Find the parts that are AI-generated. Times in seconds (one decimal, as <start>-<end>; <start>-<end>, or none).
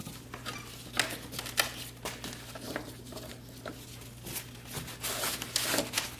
none